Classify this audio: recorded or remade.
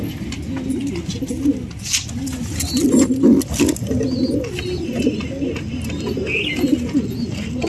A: recorded